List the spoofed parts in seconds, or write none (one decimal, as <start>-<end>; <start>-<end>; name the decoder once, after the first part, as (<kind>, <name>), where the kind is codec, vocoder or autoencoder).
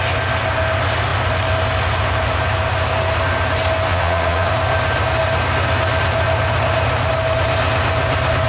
3.9-4.5 (vocoder, Vocos)